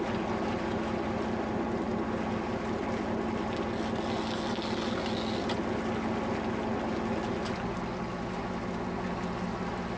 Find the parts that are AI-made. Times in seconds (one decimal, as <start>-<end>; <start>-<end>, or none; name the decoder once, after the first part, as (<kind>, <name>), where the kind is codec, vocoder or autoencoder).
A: none